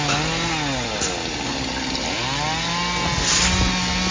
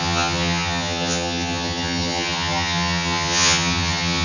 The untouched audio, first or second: first